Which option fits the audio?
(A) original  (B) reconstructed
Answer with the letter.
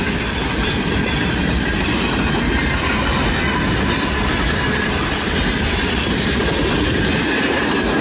A